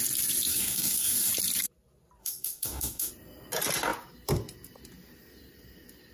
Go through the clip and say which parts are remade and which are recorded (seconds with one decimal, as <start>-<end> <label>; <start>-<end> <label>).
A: 0.0-0.5 recorded; 0.5-1.3 remade; 1.3-2.2 recorded; 2.2-3.1 remade; 3.1-6.1 recorded